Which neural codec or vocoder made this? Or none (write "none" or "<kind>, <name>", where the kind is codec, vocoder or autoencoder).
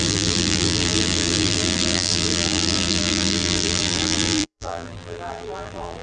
vocoder, BigVGAN v2